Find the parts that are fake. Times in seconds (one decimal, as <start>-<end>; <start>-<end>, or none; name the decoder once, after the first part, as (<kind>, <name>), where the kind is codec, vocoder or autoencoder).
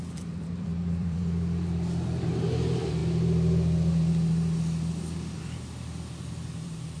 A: 0.0-3.0 (vocoder, BigVGAN v2); 5.4-7.0